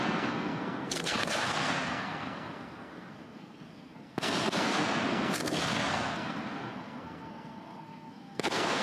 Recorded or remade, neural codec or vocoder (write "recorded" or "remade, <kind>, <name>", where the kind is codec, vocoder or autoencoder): remade, codec, SNAC